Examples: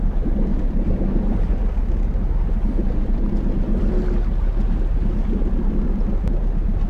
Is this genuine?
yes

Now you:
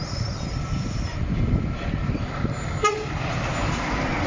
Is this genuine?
yes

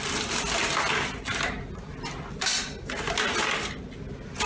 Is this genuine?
yes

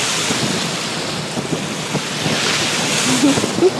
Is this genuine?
yes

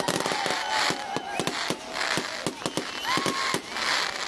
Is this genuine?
yes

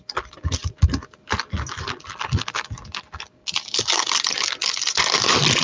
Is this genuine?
yes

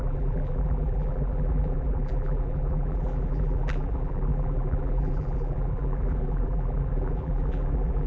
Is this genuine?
no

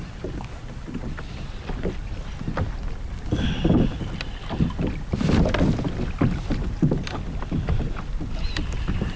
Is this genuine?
yes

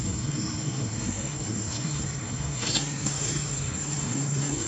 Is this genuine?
no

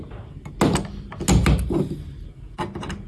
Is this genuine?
yes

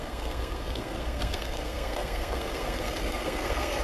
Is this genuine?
no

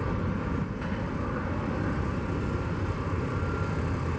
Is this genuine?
yes